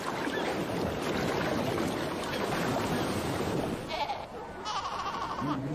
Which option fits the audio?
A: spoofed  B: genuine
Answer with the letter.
B